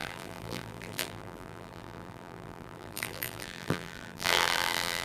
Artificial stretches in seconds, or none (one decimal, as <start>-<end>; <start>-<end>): 0.0-5.0